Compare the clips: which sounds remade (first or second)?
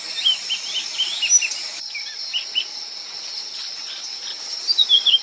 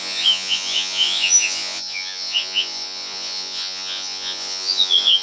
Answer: second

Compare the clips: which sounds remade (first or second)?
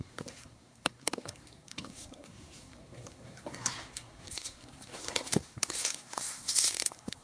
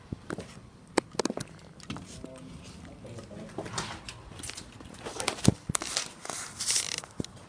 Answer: first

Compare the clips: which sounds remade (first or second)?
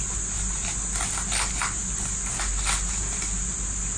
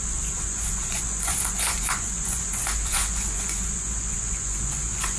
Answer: second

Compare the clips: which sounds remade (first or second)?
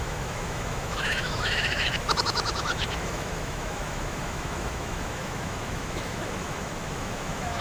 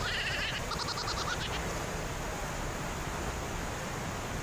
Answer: first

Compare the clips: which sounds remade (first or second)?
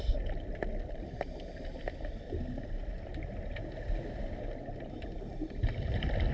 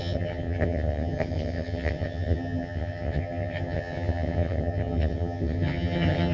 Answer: second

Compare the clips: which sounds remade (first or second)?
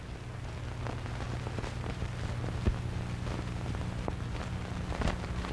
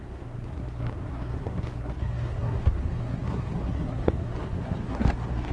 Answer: second